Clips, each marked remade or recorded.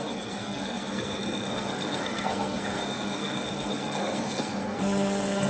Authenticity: remade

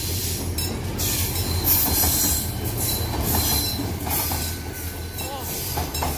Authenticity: recorded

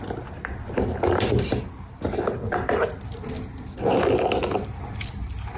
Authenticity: recorded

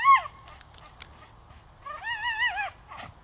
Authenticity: recorded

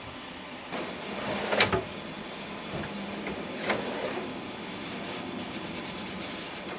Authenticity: remade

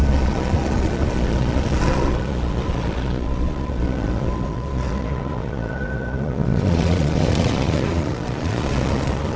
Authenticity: remade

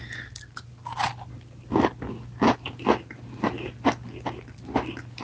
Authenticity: recorded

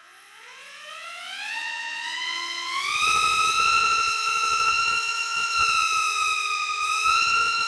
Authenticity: remade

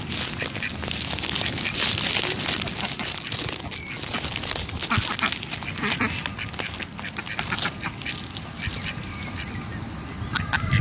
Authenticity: recorded